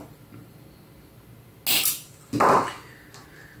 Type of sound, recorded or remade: recorded